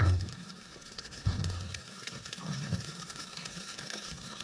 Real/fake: fake